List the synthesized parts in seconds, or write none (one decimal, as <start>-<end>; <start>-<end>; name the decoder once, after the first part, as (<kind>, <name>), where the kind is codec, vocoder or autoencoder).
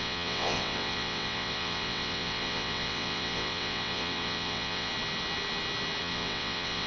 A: 0.0-4.9 (vocoder, WaveNeXt); 6.0-6.9